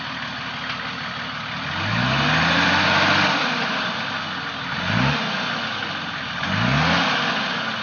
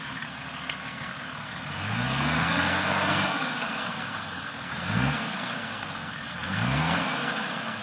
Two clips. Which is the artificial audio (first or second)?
second